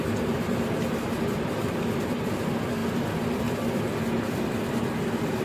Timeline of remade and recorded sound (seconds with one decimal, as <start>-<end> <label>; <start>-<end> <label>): 0.0-2.2 remade; 2.2-5.4 recorded

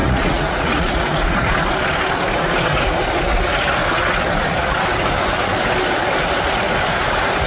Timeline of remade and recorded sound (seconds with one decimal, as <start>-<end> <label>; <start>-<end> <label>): 0.0-1.6 remade; 1.6-7.5 recorded

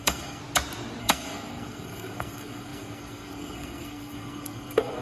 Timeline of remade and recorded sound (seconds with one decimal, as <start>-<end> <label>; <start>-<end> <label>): 0.0-0.4 remade; 0.4-1.0 recorded; 1.0-5.0 remade

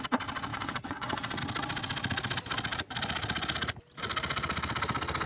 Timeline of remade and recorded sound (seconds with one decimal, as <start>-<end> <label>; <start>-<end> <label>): 0.0-0.5 recorded; 0.5-1.4 remade; 1.4-5.3 recorded